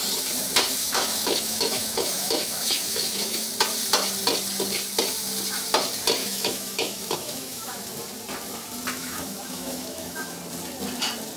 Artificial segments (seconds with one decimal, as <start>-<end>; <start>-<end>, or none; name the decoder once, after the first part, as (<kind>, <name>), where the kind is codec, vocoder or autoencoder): 0.8-3.5 (autoencoder, DAC-VAE); 6.2-7.9; 9.0-10.4